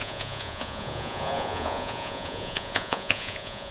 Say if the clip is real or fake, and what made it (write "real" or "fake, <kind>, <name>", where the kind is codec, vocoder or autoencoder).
fake, vocoder, Vocos